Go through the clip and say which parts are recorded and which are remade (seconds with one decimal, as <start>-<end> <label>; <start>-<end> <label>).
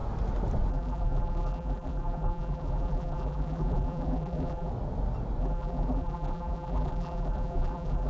0.0-0.7 recorded; 0.7-4.7 remade; 4.7-5.4 recorded; 5.4-8.1 remade